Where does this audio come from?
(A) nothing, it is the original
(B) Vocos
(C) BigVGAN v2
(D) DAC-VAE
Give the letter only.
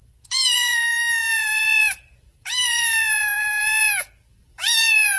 B